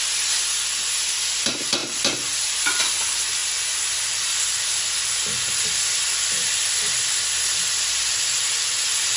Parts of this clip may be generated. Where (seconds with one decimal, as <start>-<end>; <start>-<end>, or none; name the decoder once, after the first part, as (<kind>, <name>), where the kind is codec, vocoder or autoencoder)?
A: none

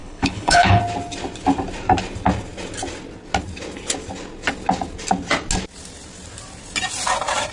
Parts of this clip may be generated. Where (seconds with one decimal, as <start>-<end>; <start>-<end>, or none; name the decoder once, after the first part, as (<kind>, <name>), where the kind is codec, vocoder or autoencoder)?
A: 0.0-0.8 (codec, HILCodec)